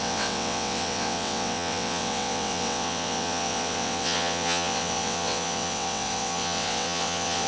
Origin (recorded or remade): remade